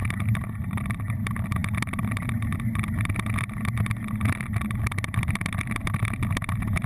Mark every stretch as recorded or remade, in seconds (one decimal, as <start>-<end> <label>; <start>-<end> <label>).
0.0-6.9 recorded